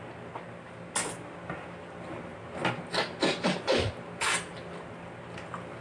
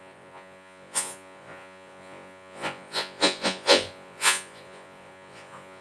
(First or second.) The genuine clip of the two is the first